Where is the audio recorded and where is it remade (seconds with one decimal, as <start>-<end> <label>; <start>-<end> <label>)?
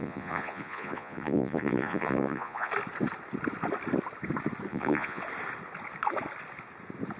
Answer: 0.0-2.7 remade; 2.7-4.7 recorded; 4.7-5.2 remade; 5.2-7.2 recorded